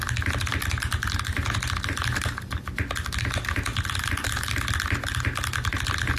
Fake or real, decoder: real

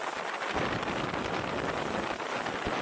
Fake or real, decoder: real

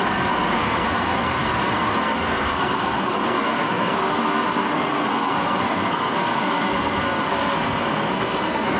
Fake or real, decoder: fake, codec, SNAC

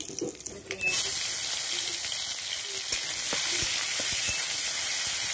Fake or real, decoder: real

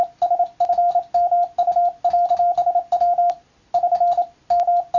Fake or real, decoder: real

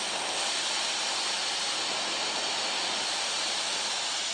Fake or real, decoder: real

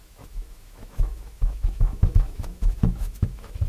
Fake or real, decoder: fake, autoencoder, DAC-VAE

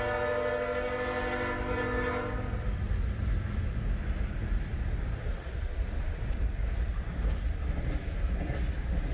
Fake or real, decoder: real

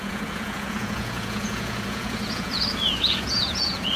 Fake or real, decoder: fake, vocoder, Vocos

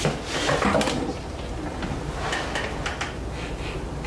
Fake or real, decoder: real